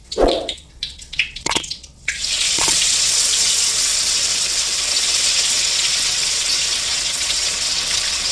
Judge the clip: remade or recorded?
remade